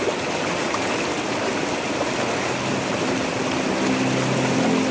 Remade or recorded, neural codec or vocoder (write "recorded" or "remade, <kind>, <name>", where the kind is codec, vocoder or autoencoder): recorded